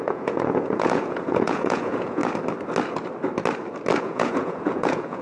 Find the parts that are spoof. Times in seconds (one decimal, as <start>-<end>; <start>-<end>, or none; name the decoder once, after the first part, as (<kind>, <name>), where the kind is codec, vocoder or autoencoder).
0.0-2.2 (vocoder, Vocos); 4.0-5.2